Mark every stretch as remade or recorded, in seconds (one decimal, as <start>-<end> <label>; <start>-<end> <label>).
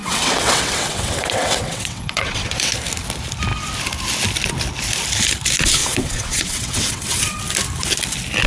0.0-2.7 remade; 2.7-5.8 recorded; 5.8-7.4 remade; 7.4-8.5 recorded